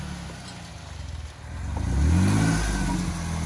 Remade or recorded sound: recorded